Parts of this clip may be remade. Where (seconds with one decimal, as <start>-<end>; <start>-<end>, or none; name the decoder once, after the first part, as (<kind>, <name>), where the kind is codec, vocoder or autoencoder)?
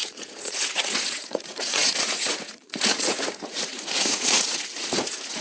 0.0-5.4 (vocoder, Vocos)